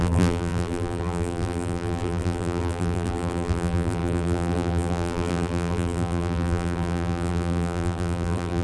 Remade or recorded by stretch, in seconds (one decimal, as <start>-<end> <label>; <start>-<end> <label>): 0.0-8.6 remade